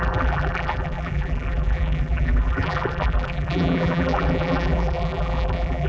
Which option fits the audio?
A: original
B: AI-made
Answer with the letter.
B